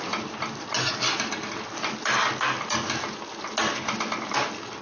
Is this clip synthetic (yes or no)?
no